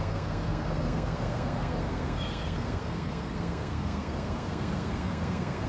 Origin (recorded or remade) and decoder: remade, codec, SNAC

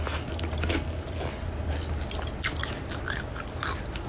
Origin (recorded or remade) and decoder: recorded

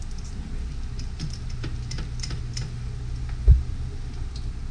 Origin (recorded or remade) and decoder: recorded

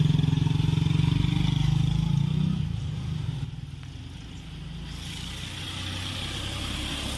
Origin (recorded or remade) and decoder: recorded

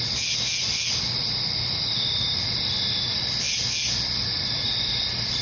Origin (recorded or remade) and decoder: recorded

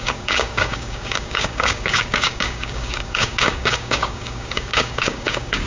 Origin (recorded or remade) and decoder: remade, codec, DAC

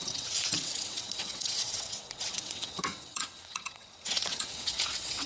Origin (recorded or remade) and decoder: remade, vocoder, WaveNeXt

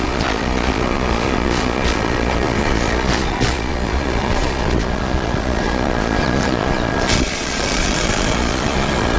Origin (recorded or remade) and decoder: remade, vocoder, Vocos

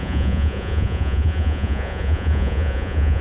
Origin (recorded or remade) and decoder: remade, vocoder, Vocos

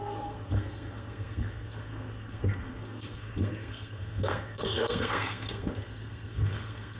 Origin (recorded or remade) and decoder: remade, codec, SNAC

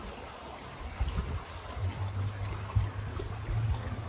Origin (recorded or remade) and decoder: recorded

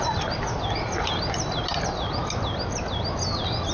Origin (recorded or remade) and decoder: recorded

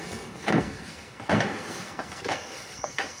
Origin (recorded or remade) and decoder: remade, codec, SNAC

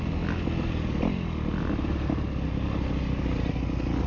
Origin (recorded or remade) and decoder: recorded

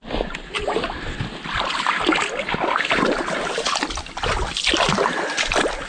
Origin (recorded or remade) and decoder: recorded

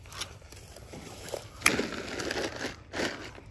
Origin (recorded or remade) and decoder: recorded